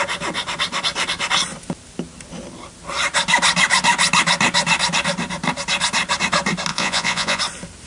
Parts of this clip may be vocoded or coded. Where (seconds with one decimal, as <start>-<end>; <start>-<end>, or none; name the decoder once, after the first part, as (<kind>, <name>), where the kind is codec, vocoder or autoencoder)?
6.7-7.4 (vocoder, Vocos)